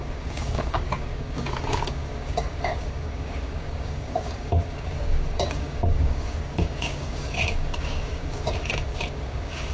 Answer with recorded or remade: remade